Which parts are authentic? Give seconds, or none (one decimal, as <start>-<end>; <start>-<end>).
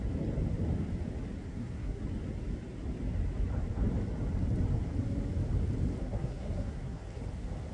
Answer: 0.0-1.5; 2.0-6.0; 7.2-7.7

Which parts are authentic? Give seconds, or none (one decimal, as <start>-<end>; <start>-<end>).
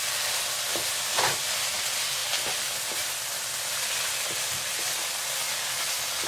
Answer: 0.0-6.3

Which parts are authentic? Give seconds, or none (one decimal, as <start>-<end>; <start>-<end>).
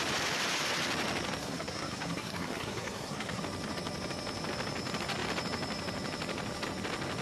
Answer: 0.0-1.4; 3.4-7.2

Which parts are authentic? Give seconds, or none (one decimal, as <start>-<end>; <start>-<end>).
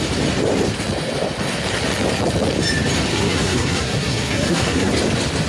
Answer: 0.0-3.1; 4.9-5.5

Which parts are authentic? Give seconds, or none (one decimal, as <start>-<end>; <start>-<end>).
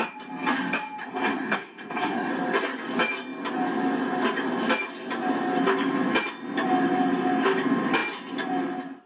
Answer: 0.0-1.0; 2.3-9.1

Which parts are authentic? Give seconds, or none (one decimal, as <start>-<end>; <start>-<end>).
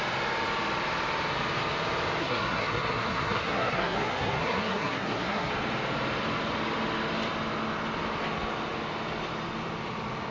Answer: 0.0-2.2; 5.5-10.3